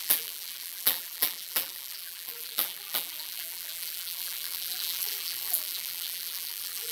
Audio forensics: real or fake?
fake